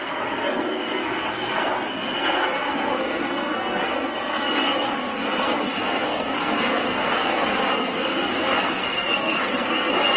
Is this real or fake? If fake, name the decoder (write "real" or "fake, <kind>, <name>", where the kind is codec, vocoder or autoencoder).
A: fake, codec, SNAC